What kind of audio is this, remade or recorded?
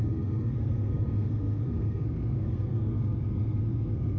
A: remade